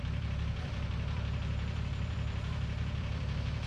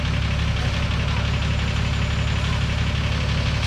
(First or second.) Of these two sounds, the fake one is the first